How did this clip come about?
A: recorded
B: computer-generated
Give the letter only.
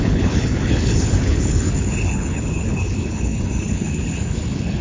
B